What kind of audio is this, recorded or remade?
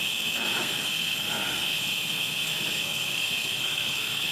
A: remade